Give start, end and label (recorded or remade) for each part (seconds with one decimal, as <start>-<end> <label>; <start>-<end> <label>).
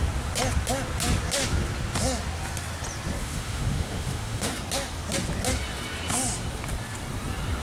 0.0-3.2 recorded; 3.2-4.5 remade; 4.5-7.6 recorded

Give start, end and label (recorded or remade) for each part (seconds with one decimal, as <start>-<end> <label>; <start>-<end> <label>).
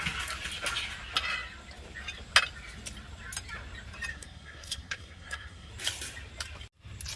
0.0-4.1 recorded; 4.1-5.7 remade; 5.7-7.2 recorded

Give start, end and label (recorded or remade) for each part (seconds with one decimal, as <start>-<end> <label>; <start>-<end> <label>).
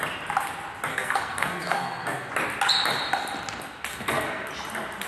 0.0-0.9 recorded; 0.9-2.3 remade; 2.3-3.9 recorded; 3.9-4.5 remade; 4.5-5.1 recorded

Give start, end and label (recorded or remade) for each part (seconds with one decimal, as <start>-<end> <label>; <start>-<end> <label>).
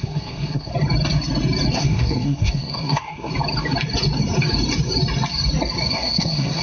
0.0-0.7 remade; 0.7-1.7 recorded; 1.7-3.3 remade; 3.3-5.9 recorded; 5.9-6.6 remade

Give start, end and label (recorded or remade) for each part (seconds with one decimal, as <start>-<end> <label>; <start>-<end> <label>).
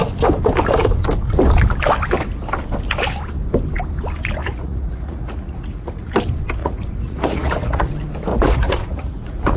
0.0-4.4 recorded; 4.4-6.1 remade; 6.1-6.6 recorded; 6.6-7.9 remade; 7.9-8.3 recorded; 8.3-9.6 remade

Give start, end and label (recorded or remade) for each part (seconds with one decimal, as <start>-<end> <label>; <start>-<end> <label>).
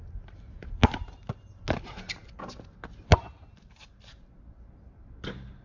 0.0-5.6 recorded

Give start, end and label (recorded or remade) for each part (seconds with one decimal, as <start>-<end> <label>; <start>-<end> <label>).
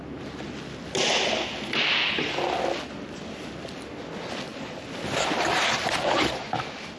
0.0-7.0 recorded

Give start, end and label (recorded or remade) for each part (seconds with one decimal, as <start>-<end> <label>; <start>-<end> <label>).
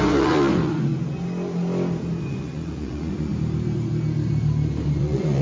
0.0-0.9 remade; 0.9-2.2 recorded; 2.2-3.3 remade; 3.3-5.0 recorded; 5.0-5.4 remade